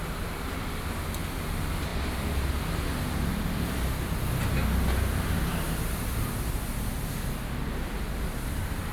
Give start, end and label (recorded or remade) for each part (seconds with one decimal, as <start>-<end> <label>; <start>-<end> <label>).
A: 0.0-8.9 recorded